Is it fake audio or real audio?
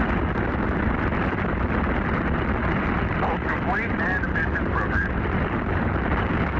real